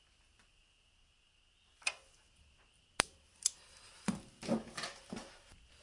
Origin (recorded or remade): recorded